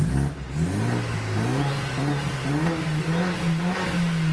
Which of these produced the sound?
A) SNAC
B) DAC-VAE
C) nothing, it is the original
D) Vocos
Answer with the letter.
C